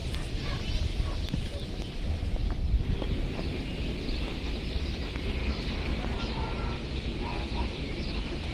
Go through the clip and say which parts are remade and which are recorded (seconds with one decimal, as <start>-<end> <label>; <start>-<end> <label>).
0.0-6.4 remade; 6.4-7.5 recorded; 7.5-8.5 remade